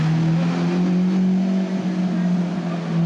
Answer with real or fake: real